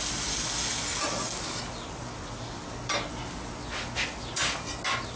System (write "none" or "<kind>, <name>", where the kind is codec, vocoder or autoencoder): none